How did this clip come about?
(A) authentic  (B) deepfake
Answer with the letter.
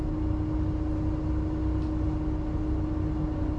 A